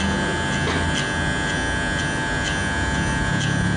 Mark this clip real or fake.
real